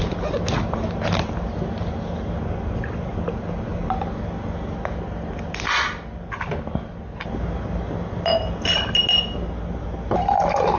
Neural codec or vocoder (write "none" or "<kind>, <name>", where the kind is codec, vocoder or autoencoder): none